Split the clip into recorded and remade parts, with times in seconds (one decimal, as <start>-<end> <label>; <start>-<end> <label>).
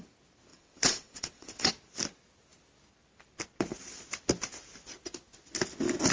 0.0-0.5 recorded; 0.5-1.7 remade; 1.7-6.1 recorded